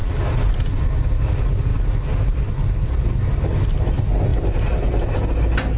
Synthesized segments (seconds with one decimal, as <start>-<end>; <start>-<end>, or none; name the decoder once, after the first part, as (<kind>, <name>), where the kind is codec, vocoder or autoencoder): none